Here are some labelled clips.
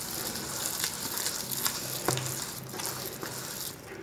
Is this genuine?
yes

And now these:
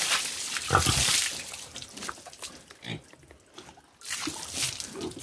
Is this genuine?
yes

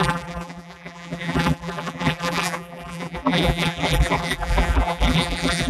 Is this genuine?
no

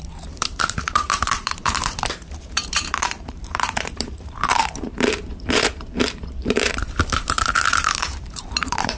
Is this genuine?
no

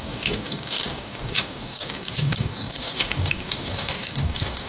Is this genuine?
no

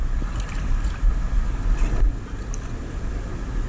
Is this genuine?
yes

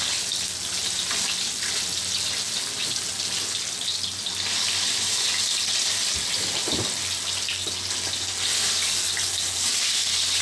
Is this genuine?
yes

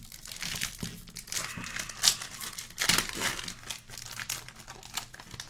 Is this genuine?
yes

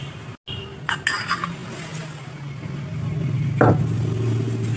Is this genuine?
yes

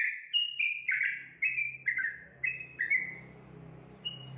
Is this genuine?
yes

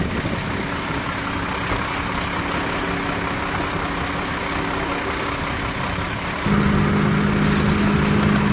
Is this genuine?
yes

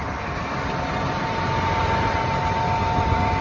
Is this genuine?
yes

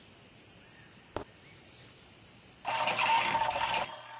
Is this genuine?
yes